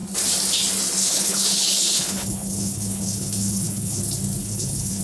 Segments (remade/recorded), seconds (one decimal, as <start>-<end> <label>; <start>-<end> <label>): 0.0-1.0 recorded; 1.0-4.0 remade; 4.0-4.4 recorded; 4.4-5.0 remade